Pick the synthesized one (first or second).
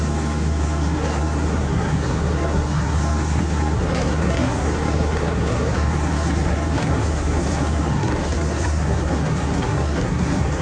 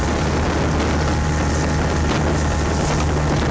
first